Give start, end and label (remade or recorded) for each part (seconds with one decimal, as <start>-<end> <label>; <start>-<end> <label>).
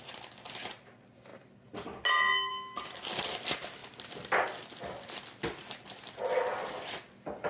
0.0-7.5 recorded